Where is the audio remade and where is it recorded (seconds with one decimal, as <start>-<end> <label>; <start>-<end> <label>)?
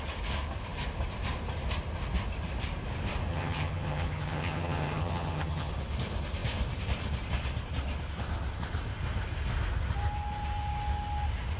0.0-3.3 recorded; 3.3-5.7 remade; 5.7-11.6 recorded